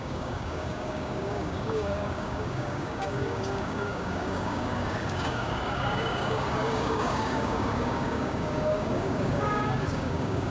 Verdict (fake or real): fake